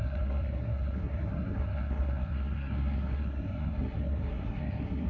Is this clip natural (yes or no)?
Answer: no